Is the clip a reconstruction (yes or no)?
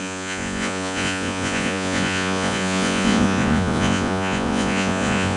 yes